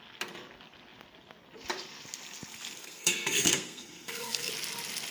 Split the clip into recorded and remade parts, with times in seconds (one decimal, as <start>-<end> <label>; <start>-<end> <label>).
0.0-2.8 recorded; 2.8-4.5 remade; 4.5-5.1 recorded

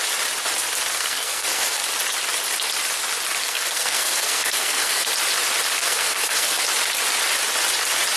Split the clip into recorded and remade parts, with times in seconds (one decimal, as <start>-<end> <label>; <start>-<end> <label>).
0.0-0.9 recorded; 0.9-1.8 remade; 1.8-3.4 recorded; 3.4-5.1 remade; 5.1-5.8 recorded; 5.8-6.6 remade; 6.6-8.2 recorded

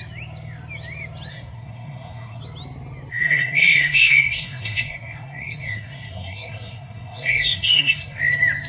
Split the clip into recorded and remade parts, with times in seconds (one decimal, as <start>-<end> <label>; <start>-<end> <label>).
0.0-1.3 recorded; 1.3-2.4 remade; 2.4-3.1 recorded; 3.1-8.2 remade; 8.2-8.7 recorded